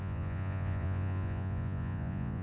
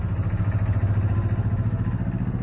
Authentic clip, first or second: second